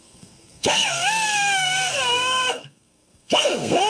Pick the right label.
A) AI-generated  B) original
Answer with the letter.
A